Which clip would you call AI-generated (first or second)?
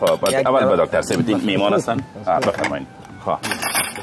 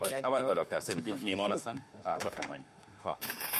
second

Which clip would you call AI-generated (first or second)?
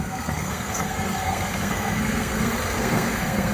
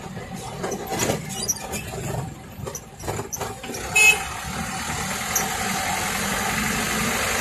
first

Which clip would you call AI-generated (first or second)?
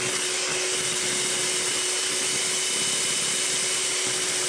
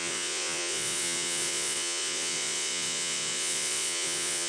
second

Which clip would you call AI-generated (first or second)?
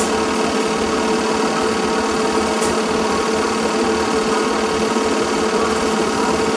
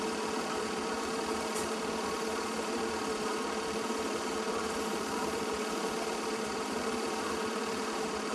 second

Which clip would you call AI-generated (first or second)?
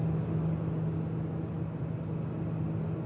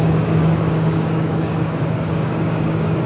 second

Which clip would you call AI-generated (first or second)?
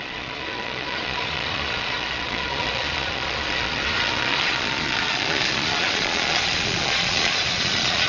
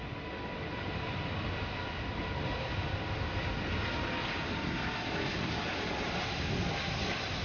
first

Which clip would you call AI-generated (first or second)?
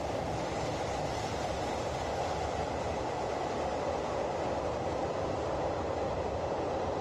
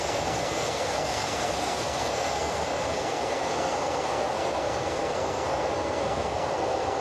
second